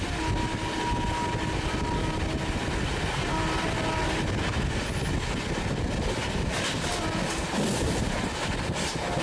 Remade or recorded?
recorded